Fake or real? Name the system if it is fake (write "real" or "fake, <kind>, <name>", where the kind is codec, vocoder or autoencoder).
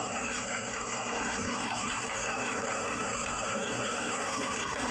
fake, codec, SNAC